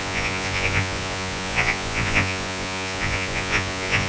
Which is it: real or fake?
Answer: fake